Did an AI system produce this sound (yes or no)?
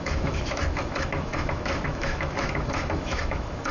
yes